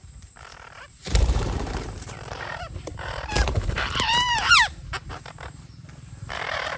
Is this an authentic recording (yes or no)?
no